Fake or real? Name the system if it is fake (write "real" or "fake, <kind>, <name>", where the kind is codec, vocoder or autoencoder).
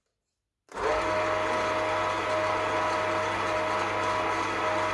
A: real